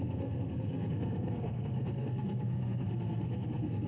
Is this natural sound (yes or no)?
no